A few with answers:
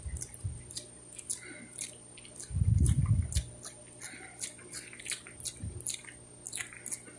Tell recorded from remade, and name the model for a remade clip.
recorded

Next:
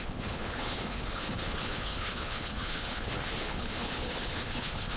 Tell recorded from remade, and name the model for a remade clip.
remade, codec, HILCodec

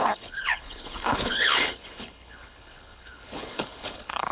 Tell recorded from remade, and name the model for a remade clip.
remade, codec, HILCodec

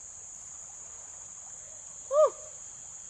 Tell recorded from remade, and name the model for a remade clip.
recorded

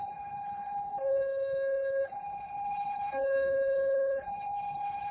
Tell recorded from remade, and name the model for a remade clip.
remade, codec, HILCodec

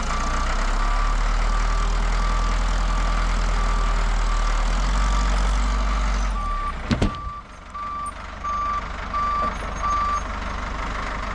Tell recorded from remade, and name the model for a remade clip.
recorded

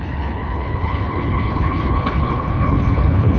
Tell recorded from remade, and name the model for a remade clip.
remade, codec, HILCodec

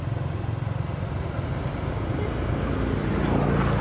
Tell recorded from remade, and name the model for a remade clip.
recorded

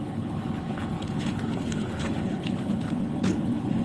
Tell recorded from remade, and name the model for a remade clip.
remade, codec, HILCodec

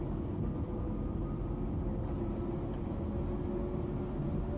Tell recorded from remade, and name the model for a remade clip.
recorded